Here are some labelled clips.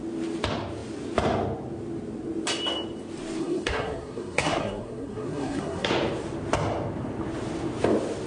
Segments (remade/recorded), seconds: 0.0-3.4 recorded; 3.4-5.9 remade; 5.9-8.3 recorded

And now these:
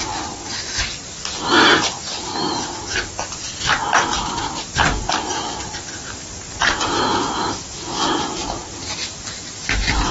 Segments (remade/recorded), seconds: 0.0-10.1 recorded

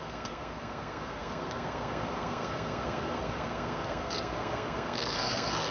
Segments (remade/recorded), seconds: 0.0-5.7 remade